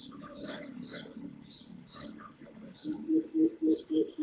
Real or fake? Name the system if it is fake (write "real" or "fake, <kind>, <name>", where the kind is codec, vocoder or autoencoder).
fake, codec, HILCodec